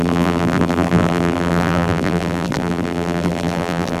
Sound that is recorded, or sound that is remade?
remade